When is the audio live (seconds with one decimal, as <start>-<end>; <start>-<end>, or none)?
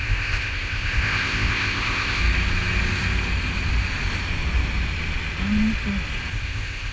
2.2-6.3